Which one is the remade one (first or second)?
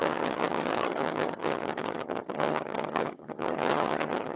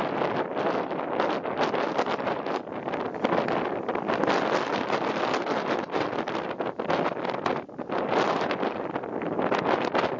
first